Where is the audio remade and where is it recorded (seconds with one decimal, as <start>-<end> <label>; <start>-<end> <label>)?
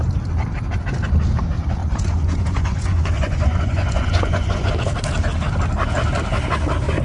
0.0-1.8 recorded; 1.8-4.7 remade; 4.7-7.0 recorded